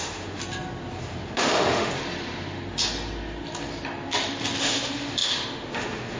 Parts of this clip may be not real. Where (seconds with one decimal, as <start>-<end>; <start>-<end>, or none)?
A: 0.0-0.4; 1.0-1.9; 4.6-6.2